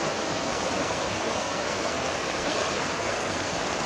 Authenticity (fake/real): fake